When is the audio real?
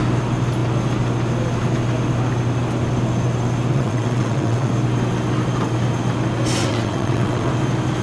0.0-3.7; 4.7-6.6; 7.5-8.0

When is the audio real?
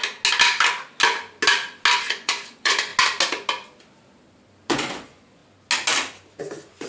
0.0-2.0; 2.9-4.7; 5.4-6.4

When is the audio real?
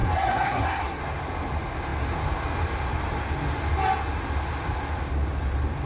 1.0-5.9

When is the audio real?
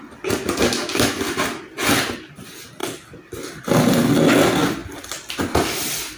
0.0-6.2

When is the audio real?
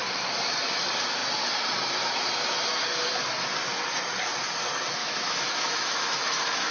0.0-5.0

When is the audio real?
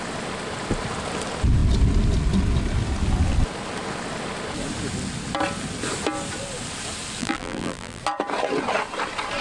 0.0-7.2; 8.0-9.4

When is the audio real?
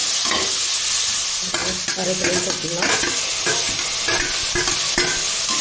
0.0-5.6